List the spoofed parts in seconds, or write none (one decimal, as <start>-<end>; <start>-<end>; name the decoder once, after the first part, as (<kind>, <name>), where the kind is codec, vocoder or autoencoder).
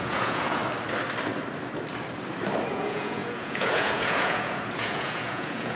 0.0-0.6 (vocoder, Vocos); 2.7-5.8